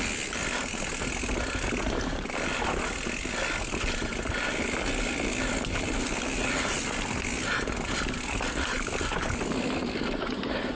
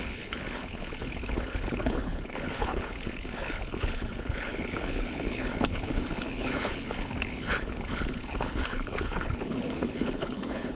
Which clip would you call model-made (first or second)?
second